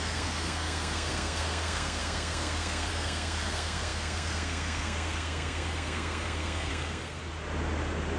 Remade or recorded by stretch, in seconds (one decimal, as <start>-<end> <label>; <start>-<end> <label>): 0.0-7.2 remade; 7.2-8.2 recorded